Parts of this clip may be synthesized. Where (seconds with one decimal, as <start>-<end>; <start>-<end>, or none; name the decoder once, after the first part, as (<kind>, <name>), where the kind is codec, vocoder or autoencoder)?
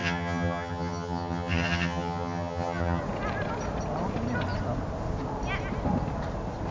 0.0-3.0 (vocoder, HiFi-GAN)